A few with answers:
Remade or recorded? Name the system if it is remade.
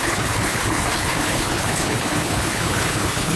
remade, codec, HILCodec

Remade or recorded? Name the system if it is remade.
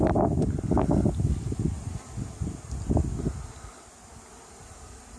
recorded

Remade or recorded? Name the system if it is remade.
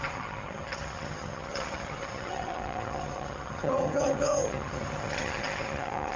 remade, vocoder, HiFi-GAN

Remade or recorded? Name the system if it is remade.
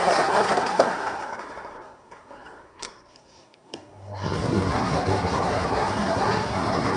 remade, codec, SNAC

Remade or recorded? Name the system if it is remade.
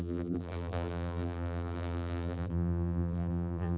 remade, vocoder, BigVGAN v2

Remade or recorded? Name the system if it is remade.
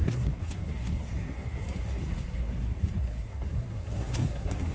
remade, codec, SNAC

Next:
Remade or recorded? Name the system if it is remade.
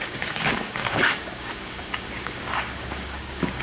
remade, codec, DAC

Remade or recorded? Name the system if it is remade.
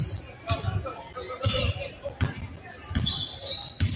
remade, vocoder, BigVGAN v2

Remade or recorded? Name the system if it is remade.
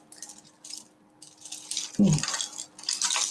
recorded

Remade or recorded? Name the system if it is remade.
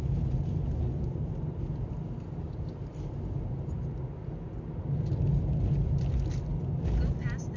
recorded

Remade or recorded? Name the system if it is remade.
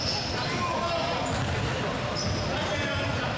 recorded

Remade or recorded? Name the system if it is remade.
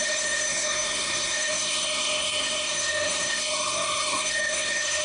remade, codec, SNAC